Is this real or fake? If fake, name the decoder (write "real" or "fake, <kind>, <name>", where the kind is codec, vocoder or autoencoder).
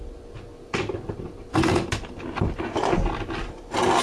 real